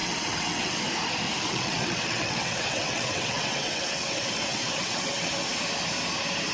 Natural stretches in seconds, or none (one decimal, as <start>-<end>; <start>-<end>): 0.8-1.4; 5.3-6.5